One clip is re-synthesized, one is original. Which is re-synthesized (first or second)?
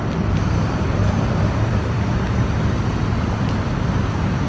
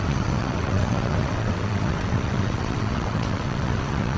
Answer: second